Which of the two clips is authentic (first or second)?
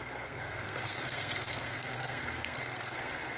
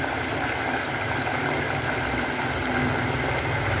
second